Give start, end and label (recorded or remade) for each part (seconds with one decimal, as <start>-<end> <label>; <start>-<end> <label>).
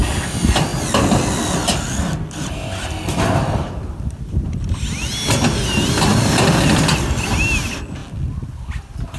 0.0-6.1 recorded; 6.1-6.8 remade; 6.8-9.2 recorded